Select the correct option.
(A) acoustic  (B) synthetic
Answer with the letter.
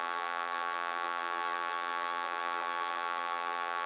B